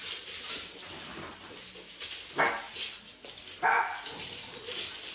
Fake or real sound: real